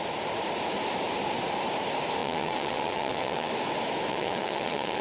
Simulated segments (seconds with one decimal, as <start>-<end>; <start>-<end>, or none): 2.2-3.5; 4.1-5.0